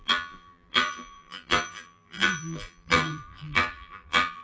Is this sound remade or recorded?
remade